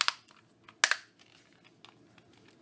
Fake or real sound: real